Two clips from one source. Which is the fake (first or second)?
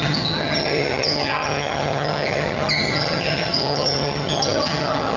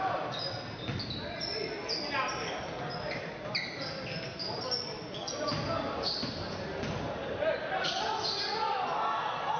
first